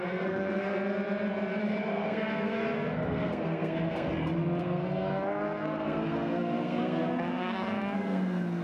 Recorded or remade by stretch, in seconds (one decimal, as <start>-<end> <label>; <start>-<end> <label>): 0.0-0.7 remade; 0.7-1.6 recorded; 1.6-4.1 remade; 4.1-4.6 recorded; 4.6-8.6 remade